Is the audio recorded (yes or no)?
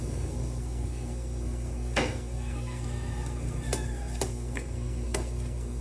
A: no